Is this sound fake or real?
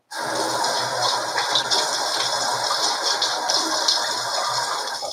real